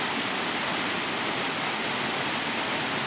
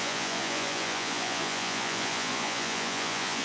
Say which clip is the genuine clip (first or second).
first